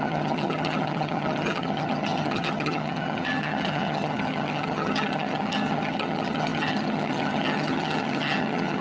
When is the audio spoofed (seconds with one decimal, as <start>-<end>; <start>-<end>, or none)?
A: 0.0-8.8